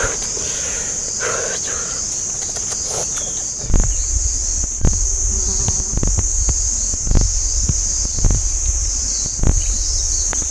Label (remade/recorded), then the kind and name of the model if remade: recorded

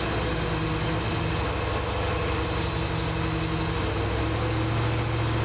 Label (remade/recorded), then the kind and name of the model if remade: recorded